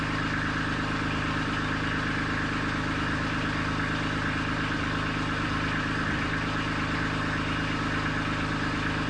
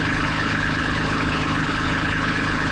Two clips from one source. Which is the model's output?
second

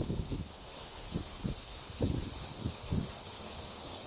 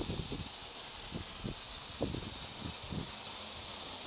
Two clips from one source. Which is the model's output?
first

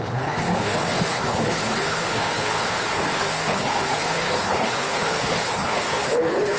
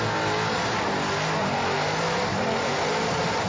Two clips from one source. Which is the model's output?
first